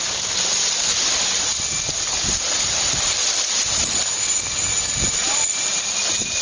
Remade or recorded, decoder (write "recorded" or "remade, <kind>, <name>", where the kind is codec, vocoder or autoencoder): recorded